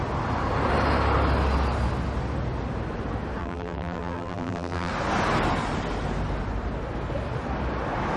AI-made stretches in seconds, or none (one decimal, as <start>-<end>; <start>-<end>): 3.4-4.9